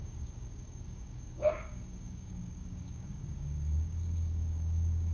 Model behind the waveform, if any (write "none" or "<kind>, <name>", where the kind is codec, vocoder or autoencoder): codec, DAC